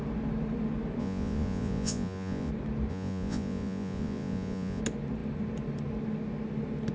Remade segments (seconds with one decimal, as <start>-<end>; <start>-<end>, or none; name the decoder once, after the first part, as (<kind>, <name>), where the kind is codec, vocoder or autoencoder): 1.0-2.5 (vocoder, Vocos); 2.9-4.8